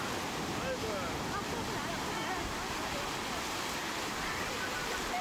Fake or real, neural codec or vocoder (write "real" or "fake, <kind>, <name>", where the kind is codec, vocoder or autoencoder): real